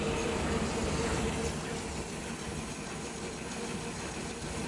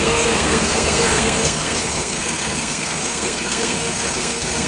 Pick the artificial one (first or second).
second